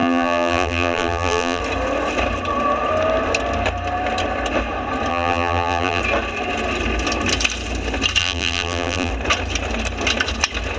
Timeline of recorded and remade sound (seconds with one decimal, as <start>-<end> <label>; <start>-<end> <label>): 0.0-1.6 remade; 1.6-5.1 recorded; 5.1-6.0 remade; 6.0-8.2 recorded; 8.2-9.1 remade; 9.1-10.8 recorded